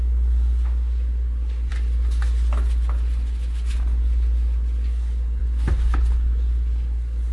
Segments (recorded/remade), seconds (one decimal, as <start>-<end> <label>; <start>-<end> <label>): 0.0-7.3 recorded